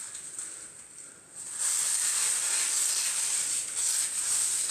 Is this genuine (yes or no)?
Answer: yes